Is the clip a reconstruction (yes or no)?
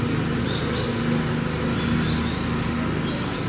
no